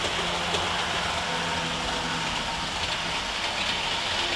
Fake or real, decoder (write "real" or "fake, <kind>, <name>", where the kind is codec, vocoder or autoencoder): real